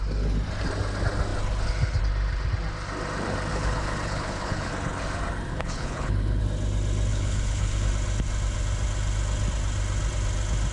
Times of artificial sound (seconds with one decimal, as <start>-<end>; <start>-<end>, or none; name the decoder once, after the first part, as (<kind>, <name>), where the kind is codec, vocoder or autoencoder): 3.5-4.7 (codec, HILCodec); 5.5-6.4; 7.1-7.9